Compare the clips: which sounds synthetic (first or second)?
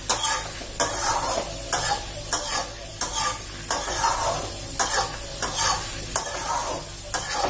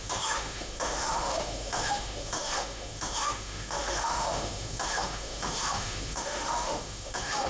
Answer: second